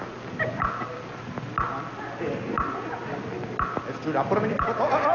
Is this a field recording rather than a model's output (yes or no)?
yes